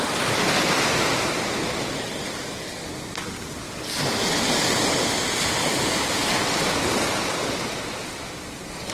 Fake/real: real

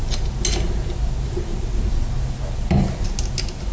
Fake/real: real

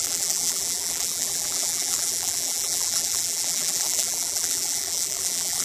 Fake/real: fake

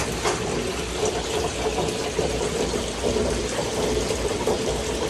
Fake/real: fake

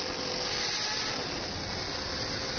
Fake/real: real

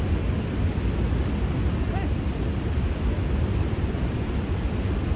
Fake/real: fake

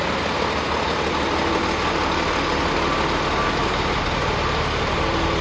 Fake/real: real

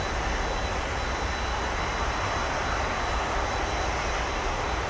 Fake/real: real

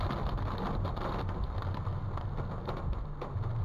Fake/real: fake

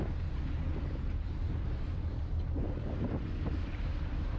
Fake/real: fake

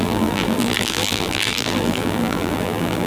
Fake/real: fake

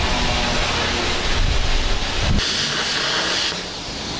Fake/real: real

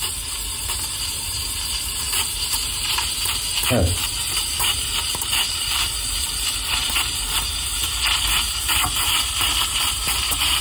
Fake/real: fake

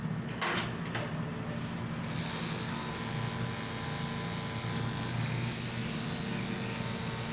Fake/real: real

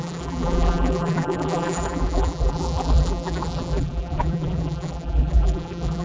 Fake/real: fake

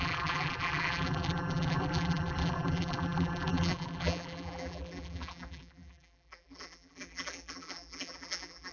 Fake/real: fake